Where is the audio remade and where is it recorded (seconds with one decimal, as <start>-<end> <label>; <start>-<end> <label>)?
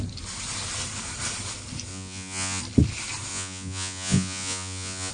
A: 0.0-1.9 recorded; 1.9-2.6 remade; 2.6-3.3 recorded; 3.3-5.1 remade